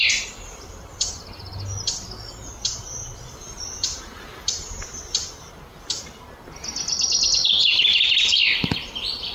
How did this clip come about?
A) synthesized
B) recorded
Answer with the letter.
B